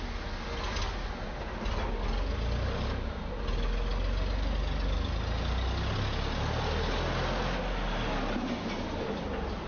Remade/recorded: recorded